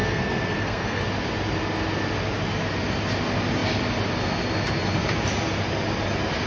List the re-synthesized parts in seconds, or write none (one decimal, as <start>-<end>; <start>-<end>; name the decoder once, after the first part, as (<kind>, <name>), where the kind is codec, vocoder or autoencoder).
0.0-1.0 (codec, SNAC)